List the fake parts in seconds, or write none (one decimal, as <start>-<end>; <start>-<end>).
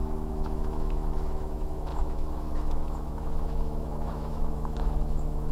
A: 0.0-5.5